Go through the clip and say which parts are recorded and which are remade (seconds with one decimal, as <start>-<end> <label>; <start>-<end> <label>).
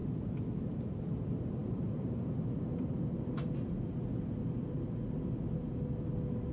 0.0-6.5 recorded